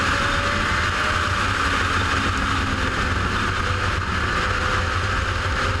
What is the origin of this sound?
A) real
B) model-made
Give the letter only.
A